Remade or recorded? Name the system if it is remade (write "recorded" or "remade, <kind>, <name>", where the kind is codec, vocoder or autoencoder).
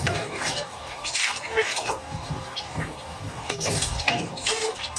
remade, codec, DAC